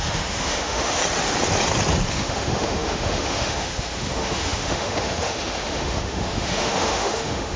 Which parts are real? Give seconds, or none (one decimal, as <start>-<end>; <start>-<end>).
1.0-2.1